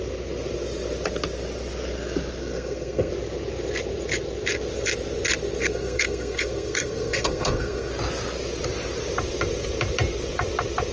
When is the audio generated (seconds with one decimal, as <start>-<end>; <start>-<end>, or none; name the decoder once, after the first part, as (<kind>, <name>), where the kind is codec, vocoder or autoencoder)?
2.4-3.1 (codec, SNAC); 5.6-7.9